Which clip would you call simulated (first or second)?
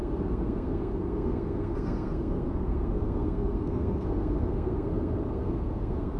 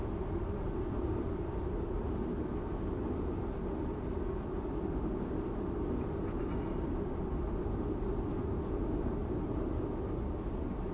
first